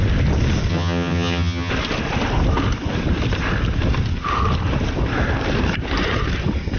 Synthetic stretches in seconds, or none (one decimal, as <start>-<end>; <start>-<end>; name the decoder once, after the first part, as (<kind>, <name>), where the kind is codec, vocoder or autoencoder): 0.7-1.7 (vocoder, HiFi-GAN)